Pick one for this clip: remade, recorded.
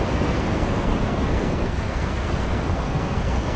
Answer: remade